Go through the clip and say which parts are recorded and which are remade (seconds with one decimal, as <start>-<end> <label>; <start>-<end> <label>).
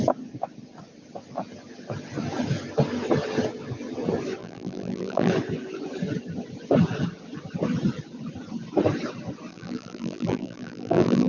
0.0-4.4 recorded; 4.4-5.3 remade; 5.3-9.5 recorded; 9.5-11.3 remade